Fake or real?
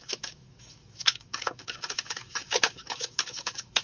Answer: fake